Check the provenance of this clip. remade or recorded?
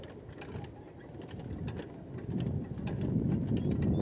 recorded